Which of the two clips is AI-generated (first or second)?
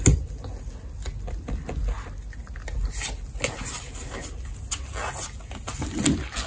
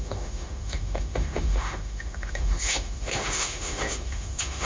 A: second